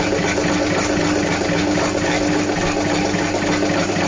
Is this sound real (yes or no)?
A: yes